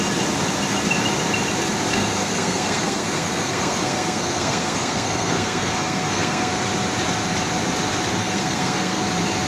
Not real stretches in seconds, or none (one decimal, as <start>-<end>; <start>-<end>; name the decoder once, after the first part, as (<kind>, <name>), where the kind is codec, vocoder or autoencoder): 1.9-6.5 (codec, SNAC); 8.2-9.0